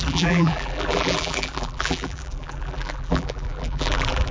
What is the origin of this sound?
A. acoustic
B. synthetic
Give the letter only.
B